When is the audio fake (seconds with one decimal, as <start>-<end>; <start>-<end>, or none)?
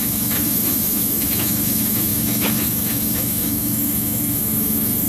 0.0-5.1